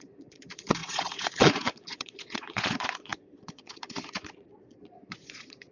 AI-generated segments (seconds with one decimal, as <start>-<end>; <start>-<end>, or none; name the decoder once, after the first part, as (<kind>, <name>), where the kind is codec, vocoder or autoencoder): 0.0-5.7 (vocoder, Vocos)